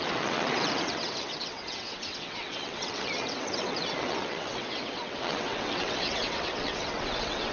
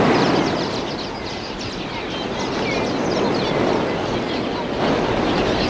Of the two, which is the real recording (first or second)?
second